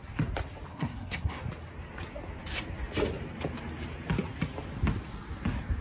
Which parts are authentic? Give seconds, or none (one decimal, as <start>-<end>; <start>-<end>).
0.0-0.7; 1.4-5.8